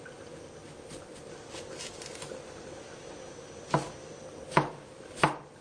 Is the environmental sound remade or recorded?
recorded